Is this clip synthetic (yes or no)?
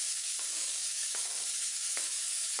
yes